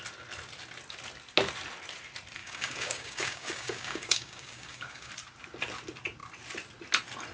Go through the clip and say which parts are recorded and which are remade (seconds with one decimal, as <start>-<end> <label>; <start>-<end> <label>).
0.0-2.4 recorded; 2.4-5.1 remade; 5.1-7.3 recorded